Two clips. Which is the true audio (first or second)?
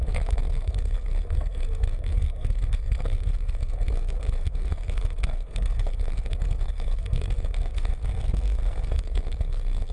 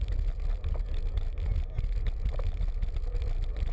second